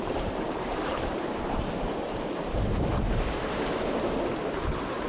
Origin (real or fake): fake